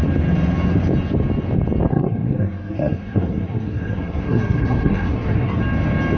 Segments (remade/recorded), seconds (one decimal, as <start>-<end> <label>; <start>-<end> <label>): 0.0-1.9 recorded; 1.9-5.6 remade; 5.6-6.2 recorded